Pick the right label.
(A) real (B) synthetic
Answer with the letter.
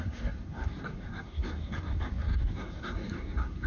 B